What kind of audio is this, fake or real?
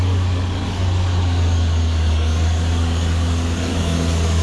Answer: fake